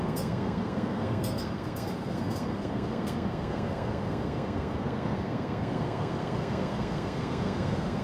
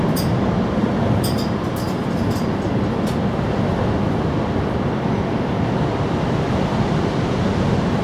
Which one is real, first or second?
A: second